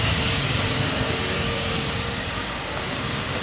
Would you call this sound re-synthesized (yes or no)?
yes